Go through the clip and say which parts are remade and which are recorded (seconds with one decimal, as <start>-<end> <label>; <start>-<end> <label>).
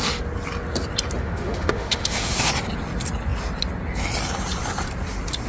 0.0-1.2 recorded; 1.2-2.5 remade; 2.5-5.5 recorded